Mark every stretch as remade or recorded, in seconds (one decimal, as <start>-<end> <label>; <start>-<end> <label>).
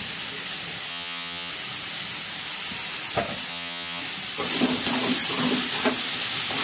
0.0-0.9 recorded; 0.9-1.5 remade; 1.5-3.5 recorded; 3.5-4.0 remade; 4.0-6.6 recorded